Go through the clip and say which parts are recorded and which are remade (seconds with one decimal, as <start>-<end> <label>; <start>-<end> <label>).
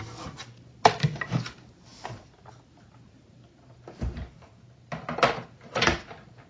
0.0-6.5 recorded